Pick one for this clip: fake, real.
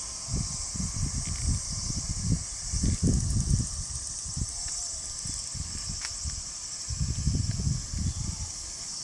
fake